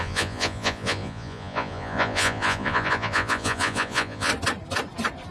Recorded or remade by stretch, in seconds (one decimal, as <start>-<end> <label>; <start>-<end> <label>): 0.0-4.3 remade; 4.3-5.3 recorded